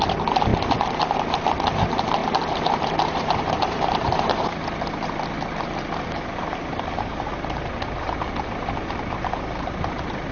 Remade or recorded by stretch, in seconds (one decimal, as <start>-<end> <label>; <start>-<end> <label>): 0.0-2.2 recorded; 2.2-4.6 remade; 4.6-10.3 recorded